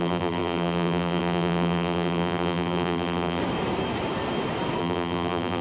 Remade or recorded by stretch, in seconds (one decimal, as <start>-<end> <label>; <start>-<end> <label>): 0.0-3.4 remade; 3.4-4.8 recorded; 4.8-5.6 remade